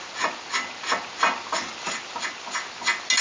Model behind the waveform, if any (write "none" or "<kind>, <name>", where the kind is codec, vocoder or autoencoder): none